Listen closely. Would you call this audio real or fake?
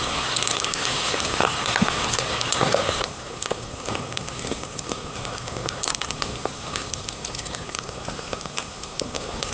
fake